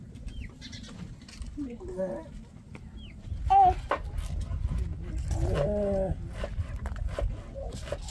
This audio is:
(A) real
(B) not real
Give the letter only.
A